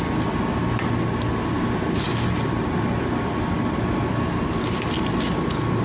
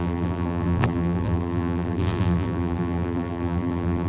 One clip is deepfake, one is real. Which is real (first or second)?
first